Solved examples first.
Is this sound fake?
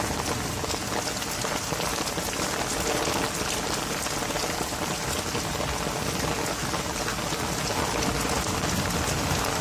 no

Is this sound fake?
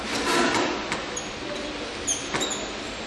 no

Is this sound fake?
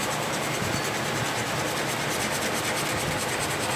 no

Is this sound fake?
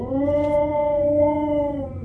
no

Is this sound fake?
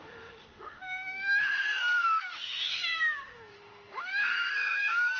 yes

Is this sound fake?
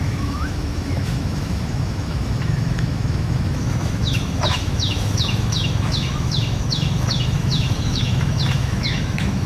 yes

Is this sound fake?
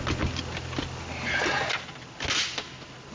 no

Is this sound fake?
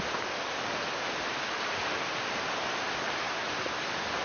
no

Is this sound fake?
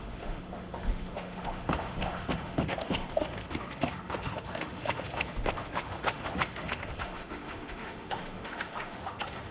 yes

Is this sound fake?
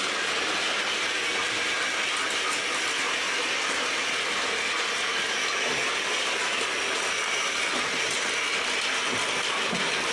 no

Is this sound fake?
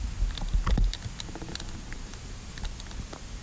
no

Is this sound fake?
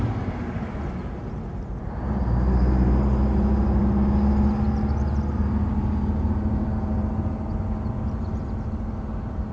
no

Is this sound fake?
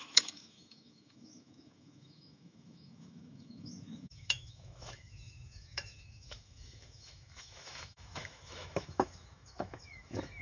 yes